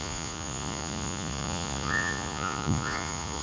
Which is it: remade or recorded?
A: remade